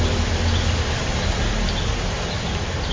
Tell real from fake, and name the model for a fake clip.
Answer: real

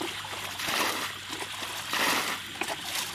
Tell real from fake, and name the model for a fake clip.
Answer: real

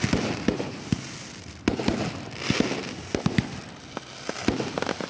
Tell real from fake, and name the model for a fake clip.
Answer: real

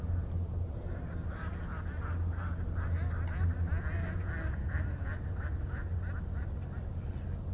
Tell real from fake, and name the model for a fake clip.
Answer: real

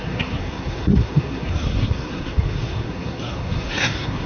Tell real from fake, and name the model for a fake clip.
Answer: fake, codec, SNAC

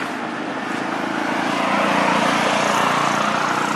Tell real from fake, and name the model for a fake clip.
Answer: real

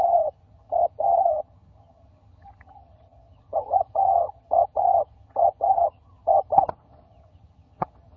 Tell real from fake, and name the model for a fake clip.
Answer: fake, vocoder, HiFi-GAN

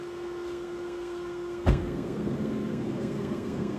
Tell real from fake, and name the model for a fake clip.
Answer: fake, codec, SNAC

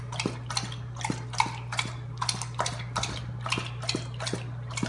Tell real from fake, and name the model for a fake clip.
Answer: real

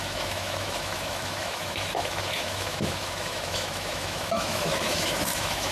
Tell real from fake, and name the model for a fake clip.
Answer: fake, autoencoder, DAC-VAE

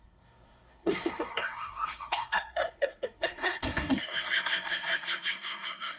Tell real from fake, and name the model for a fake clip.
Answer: fake, codec, SNAC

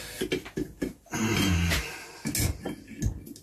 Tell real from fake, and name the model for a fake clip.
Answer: real